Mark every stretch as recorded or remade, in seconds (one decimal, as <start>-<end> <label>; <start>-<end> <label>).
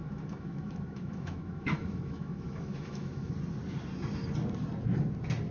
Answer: 0.0-3.3 remade; 3.3-5.5 recorded